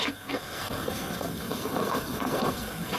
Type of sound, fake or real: fake